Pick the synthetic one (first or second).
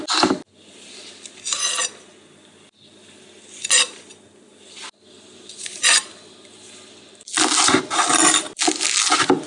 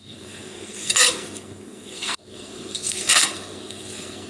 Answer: second